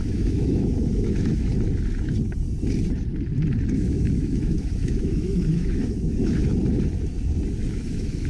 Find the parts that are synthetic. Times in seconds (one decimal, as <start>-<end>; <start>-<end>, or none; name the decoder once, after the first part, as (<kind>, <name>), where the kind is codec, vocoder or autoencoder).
0.0-1.5 (autoencoder, DAC-VAE); 3.7-6.5; 7.7-8.3